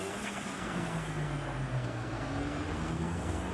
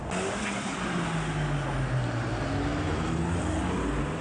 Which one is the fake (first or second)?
first